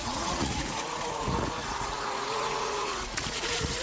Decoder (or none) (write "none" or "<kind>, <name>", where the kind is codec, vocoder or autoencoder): vocoder, Vocos